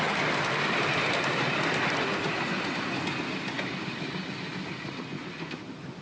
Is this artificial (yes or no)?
no